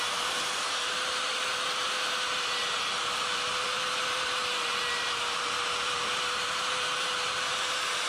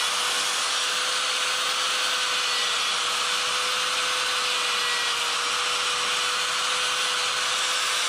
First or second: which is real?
second